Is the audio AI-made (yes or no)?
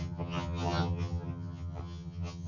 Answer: yes